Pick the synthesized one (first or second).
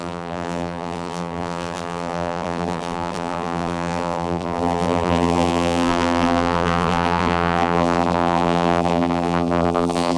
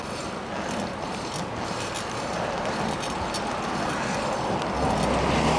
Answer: first